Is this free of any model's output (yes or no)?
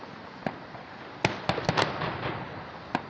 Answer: yes